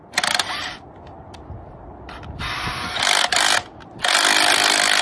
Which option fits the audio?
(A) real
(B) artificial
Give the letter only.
A